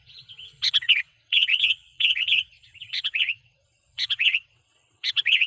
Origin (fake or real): fake